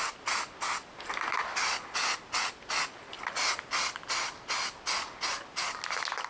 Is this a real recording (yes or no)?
yes